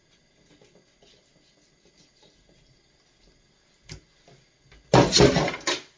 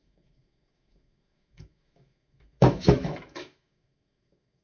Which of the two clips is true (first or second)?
first